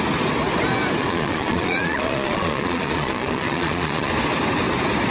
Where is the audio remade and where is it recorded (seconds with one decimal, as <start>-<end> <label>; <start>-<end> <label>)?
0.0-1.0 recorded; 1.0-4.1 remade; 4.1-5.1 recorded